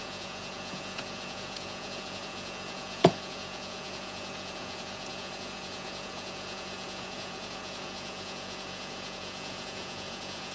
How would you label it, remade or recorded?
remade